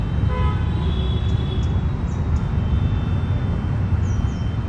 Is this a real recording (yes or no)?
yes